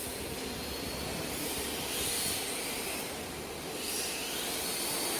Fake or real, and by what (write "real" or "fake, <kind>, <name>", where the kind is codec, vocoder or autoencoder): real